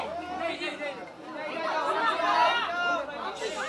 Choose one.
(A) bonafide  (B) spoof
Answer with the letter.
A